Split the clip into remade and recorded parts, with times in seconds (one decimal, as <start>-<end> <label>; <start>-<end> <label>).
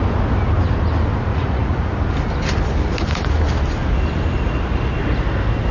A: 0.0-1.3 recorded; 1.3-1.8 remade; 1.8-5.7 recorded